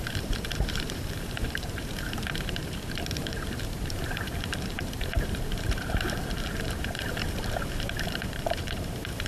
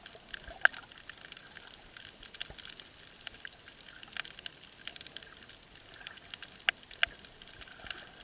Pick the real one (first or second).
second